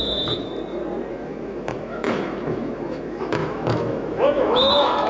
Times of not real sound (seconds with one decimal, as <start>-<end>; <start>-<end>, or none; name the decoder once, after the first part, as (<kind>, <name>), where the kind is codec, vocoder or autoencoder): 0.0-0.5 (autoencoder, DAC-VAE); 1.1-5.1